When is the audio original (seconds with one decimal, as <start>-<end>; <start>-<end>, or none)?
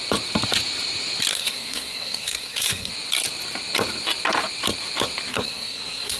0.0-1.3; 2.9-5.3